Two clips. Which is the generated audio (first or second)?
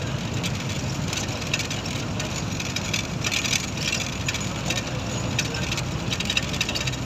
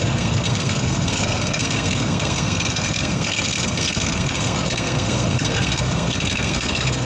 second